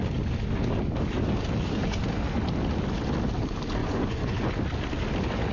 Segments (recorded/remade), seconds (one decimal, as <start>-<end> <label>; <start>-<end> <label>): 0.0-3.8 recorded; 3.8-4.5 remade; 4.5-5.5 recorded